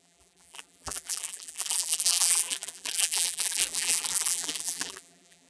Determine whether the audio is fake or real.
fake